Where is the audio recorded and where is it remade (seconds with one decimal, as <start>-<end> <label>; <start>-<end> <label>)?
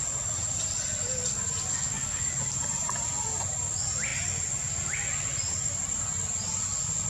0.0-1.7 recorded; 1.7-2.3 remade; 2.3-7.1 recorded